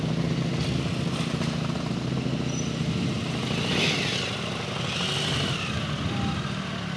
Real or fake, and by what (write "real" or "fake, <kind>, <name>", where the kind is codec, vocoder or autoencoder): real